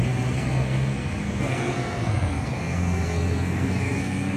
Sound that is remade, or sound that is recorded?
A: remade